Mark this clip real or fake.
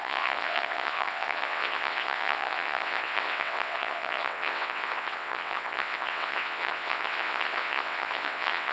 fake